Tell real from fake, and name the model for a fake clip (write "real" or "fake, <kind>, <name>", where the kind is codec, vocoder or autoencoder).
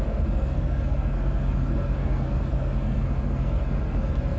fake, codec, SNAC